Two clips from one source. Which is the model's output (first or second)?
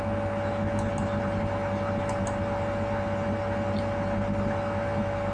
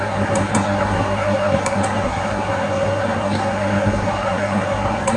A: second